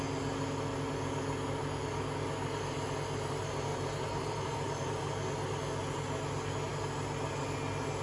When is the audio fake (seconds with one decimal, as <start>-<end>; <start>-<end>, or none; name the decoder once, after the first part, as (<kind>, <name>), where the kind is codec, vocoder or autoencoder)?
3.7-5.1 (vocoder, BigVGAN v2)